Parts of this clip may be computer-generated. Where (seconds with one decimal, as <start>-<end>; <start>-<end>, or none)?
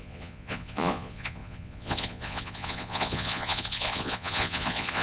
0.0-5.0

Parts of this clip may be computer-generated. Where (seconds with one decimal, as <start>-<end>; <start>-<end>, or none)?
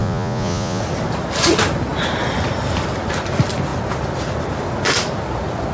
0.0-0.8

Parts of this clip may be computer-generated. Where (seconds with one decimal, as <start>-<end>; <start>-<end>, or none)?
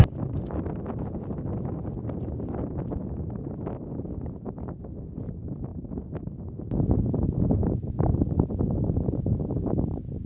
5.7-6.2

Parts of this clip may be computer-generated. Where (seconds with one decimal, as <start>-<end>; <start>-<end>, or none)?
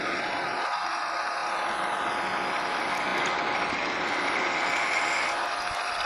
none